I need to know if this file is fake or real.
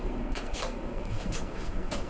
fake